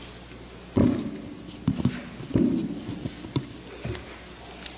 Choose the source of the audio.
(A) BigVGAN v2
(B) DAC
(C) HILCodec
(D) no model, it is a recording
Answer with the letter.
D